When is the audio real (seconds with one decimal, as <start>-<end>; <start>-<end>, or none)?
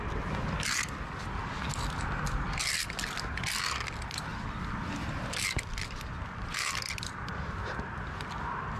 0.0-8.8